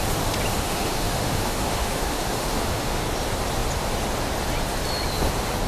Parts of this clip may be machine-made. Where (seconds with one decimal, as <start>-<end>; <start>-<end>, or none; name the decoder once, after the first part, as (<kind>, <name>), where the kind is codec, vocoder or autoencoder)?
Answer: 0.5-3.0 (autoencoder, DAC-VAE)